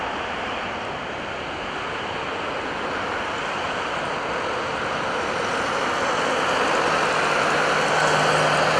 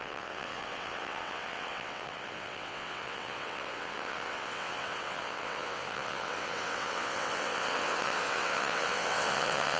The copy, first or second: second